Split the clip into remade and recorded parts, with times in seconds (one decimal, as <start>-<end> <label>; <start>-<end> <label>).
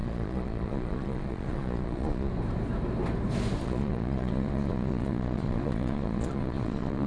0.0-2.3 remade; 2.3-3.6 recorded; 3.6-7.1 remade